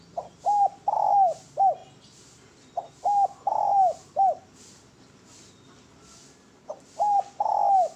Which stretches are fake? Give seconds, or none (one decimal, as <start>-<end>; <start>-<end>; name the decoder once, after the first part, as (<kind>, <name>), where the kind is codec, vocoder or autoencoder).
none